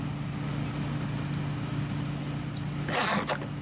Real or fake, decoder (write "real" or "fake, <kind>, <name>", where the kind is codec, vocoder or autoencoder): real